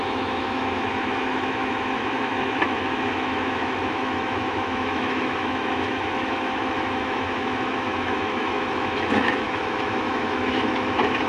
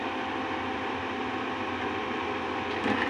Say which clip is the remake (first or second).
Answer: first